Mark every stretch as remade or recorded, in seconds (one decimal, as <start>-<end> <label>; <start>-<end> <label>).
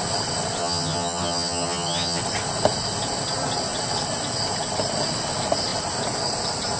0.0-0.6 recorded; 0.6-2.2 remade; 2.2-6.8 recorded